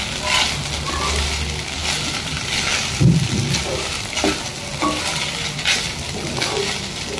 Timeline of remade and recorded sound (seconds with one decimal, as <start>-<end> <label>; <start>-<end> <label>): 0.0-7.2 recorded

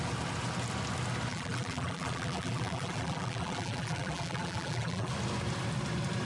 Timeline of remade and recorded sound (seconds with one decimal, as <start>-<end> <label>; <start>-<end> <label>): 0.0-1.3 recorded; 1.3-5.1 remade; 5.1-6.3 recorded

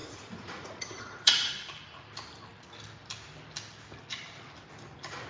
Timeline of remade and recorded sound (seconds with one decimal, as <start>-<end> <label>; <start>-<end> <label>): 0.0-1.5 remade; 1.5-5.3 recorded

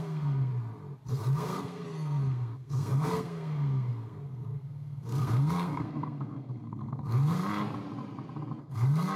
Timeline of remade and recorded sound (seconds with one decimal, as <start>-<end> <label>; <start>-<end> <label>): 0.0-0.5 remade; 0.5-1.1 recorded; 1.1-7.4 remade; 7.4-8.6 recorded; 8.6-9.2 remade

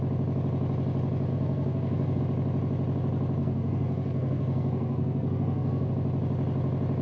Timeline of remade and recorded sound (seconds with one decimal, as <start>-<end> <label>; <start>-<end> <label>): 0.0-1.3 recorded; 1.3-2.2 remade; 2.2-3.4 recorded; 3.4-5.9 remade; 5.9-7.0 recorded